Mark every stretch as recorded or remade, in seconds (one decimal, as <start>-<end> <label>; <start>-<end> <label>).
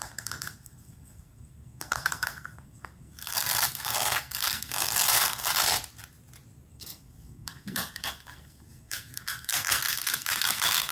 0.0-5.5 remade; 5.5-6.7 recorded; 6.7-10.9 remade